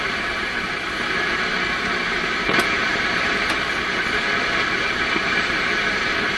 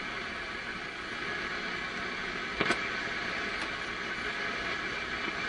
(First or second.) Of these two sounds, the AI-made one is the first